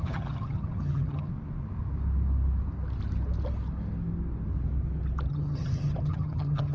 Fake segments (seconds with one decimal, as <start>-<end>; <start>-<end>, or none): 0.0-1.3; 5.3-6.7